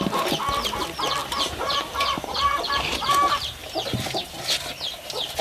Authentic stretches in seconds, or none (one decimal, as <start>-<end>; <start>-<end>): 0.0-1.2; 2.9-5.4